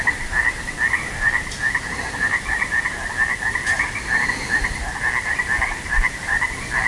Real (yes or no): no